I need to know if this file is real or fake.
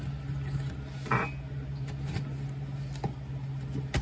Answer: real